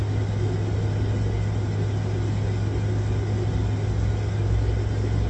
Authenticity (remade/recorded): recorded